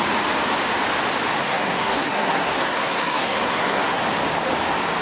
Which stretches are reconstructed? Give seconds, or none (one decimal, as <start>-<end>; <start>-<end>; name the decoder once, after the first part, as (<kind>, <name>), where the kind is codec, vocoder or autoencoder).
1.4-4.0 (codec, SNAC)

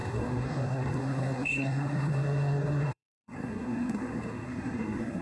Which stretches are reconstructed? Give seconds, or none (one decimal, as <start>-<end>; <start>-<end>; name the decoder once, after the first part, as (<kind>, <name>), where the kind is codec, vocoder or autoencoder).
0.0-5.2 (codec, SNAC)

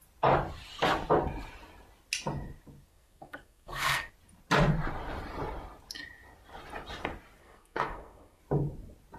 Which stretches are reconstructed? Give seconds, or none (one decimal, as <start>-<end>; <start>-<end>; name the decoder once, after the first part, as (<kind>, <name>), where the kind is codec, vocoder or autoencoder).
2.9-4.1 (codec, SNAC); 7.4-8.4